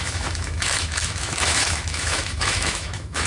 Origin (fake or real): fake